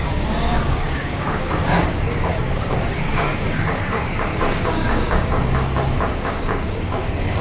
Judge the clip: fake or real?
fake